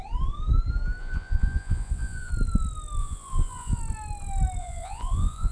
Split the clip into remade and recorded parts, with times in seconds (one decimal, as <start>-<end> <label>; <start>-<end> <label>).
0.0-1.0 recorded; 1.0-2.3 remade; 2.3-3.0 recorded; 3.0-3.8 remade; 3.8-4.6 recorded; 4.6-5.5 remade